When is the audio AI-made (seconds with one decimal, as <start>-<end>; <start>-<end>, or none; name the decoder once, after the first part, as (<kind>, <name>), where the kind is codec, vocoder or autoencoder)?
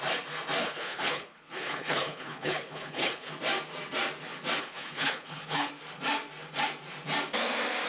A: 0.6-3.3 (codec, HILCodec); 4.6-5.7